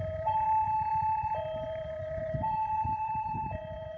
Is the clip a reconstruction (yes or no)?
yes